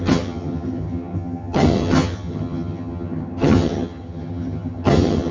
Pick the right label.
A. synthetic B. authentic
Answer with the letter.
A